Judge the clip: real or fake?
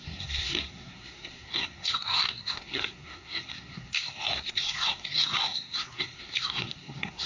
fake